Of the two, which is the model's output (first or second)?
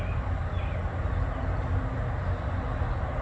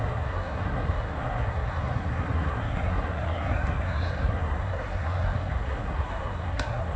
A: second